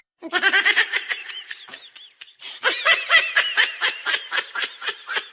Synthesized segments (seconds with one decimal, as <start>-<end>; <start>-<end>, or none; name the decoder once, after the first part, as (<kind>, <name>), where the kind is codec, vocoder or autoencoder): 0.0-1.7 (vocoder, BigVGAN v2); 4.5-5.3